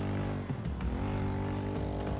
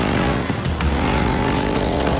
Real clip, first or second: first